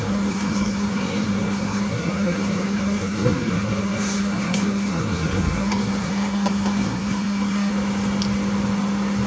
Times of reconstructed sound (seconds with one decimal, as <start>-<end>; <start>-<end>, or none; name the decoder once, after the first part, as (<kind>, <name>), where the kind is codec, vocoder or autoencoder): 0.0-7.7 (codec, SNAC)